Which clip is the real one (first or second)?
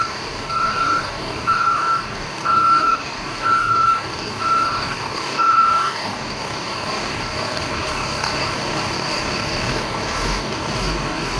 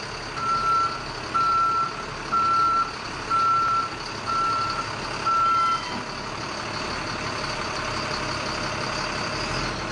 second